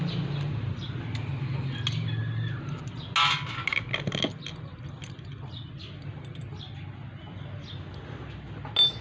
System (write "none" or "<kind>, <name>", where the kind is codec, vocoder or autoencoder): none